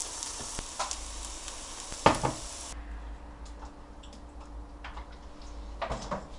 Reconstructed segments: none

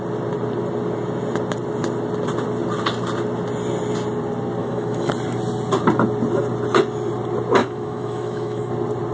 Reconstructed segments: 4.6-5.1; 7.6-8.7

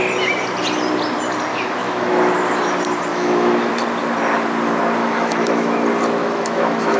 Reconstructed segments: 1.5-2.3; 3.1-3.7; 5.0-5.8; 6.2-7.0

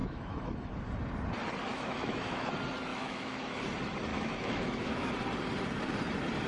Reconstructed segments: 0.0-0.7; 1.7-2.5; 2.9-3.6; 4.1-5.1

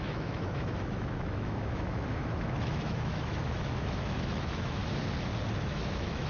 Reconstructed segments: 0.0-4.8; 5.6-6.3

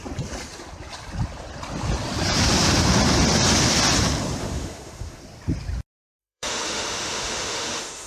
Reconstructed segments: 4.4-5.2; 6.2-8.1